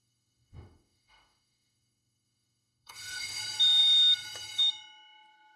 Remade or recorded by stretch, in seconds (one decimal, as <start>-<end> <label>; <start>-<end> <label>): 0.0-3.4 remade; 3.4-5.6 recorded